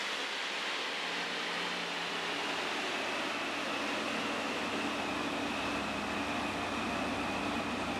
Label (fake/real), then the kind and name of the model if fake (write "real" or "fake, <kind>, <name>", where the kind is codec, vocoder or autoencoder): real